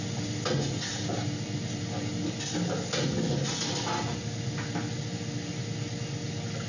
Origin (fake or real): real